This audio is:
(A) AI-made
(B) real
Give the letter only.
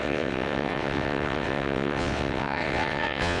A